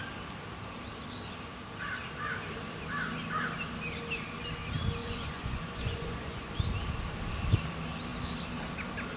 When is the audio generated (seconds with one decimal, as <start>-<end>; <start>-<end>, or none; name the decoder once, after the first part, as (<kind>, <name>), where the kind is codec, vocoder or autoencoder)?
5.0-6.5 (vocoder, Vocos)